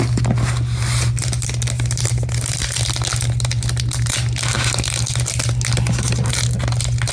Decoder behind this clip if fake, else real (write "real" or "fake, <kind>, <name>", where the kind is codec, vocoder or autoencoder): real